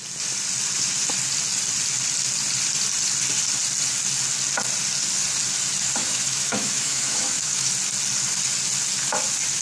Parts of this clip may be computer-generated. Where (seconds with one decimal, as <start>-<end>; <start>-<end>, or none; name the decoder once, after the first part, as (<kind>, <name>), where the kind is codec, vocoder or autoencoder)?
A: 6.0-7.7 (autoencoder, DAC-VAE)

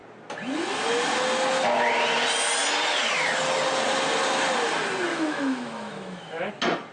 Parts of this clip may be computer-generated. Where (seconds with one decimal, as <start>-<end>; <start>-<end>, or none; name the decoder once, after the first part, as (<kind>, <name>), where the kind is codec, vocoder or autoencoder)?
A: 5.1-6.5 (autoencoder, DAC-VAE)